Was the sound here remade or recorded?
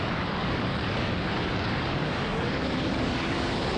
remade